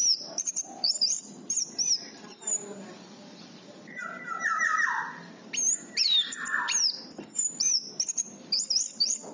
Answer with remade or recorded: remade